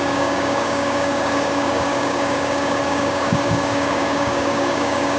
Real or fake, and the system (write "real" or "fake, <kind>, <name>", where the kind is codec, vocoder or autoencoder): fake, codec, DAC